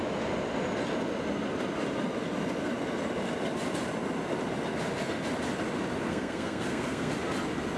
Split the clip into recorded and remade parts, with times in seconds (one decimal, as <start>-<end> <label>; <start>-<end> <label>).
0.0-6.1 recorded; 6.1-7.1 remade; 7.1-7.8 recorded